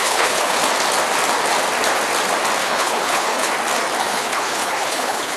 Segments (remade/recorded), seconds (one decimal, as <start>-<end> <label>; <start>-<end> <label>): 0.0-0.6 remade; 0.6-2.6 recorded; 2.6-3.5 remade; 3.5-4.0 recorded; 4.0-5.4 remade